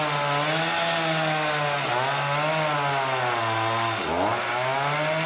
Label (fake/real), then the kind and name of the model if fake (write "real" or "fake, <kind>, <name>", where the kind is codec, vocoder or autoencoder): real